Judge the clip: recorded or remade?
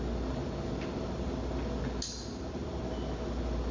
recorded